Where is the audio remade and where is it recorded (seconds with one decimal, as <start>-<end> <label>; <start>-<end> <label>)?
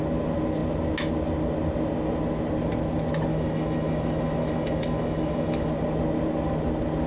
0.0-3.3 recorded; 3.3-5.7 remade; 5.7-7.1 recorded